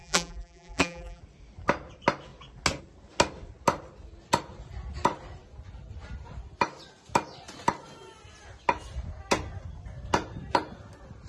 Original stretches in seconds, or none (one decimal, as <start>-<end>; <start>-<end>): 1.2-11.3